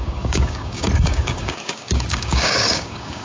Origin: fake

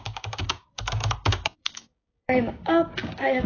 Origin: fake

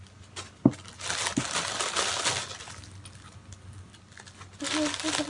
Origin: real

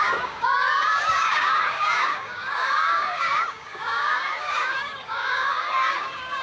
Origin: fake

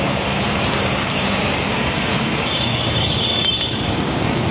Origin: fake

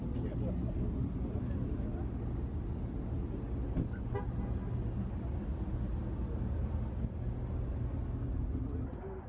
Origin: real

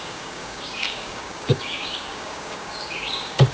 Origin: fake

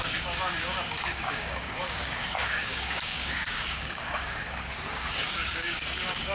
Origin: fake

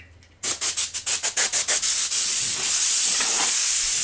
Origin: real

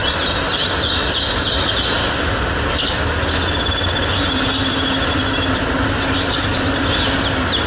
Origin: real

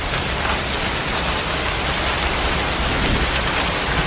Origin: real